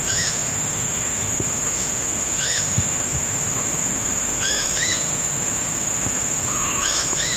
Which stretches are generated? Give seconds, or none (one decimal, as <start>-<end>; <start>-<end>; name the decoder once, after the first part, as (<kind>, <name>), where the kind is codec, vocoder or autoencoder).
0.0-7.4 (autoencoder, DAC-VAE)